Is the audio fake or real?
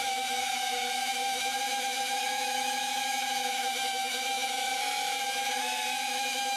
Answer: fake